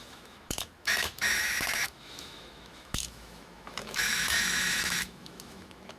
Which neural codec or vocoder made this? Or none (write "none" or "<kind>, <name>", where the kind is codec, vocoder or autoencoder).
autoencoder, DAC-VAE